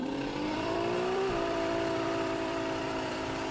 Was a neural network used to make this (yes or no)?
yes